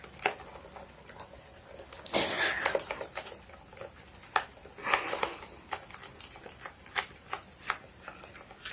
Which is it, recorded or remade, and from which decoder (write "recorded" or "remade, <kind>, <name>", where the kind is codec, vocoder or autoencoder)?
recorded